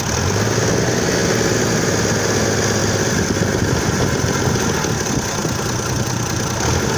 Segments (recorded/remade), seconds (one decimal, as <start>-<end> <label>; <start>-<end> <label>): 0.0-2.8 recorded; 2.8-3.6 remade; 3.6-7.0 recorded